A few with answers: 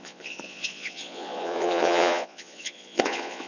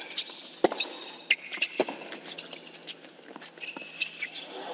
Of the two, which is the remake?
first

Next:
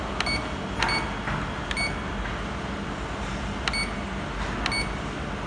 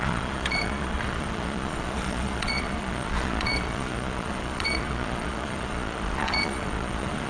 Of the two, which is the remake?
second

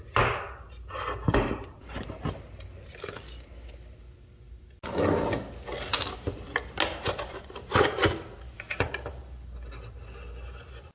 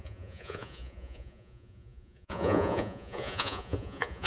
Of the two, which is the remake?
second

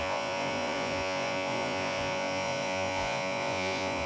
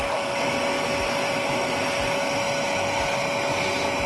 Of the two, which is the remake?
first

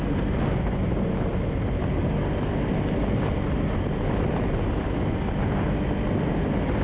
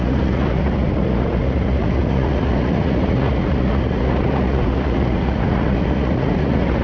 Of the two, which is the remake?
second